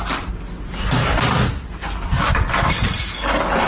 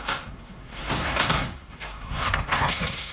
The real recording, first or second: first